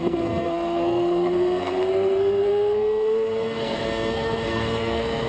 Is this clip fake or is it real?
fake